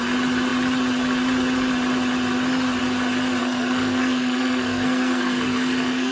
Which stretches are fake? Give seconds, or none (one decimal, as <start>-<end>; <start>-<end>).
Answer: 3.4-6.1